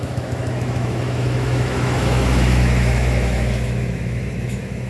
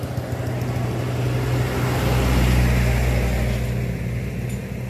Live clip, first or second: second